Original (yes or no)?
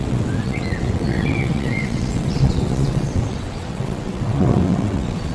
no